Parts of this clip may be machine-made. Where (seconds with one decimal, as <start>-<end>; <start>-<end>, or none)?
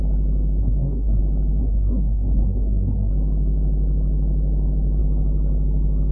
0.6-1.2; 1.6-3.1